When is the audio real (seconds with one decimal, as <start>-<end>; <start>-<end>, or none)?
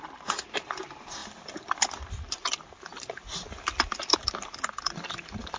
0.0-5.6